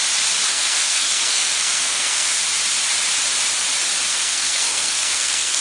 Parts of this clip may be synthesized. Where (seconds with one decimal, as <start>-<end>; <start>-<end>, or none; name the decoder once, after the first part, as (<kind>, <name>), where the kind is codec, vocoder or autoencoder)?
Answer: 0.5-2.4 (codec, SNAC); 4.1-5.6